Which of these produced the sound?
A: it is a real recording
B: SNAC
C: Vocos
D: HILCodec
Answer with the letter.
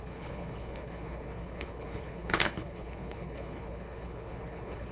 D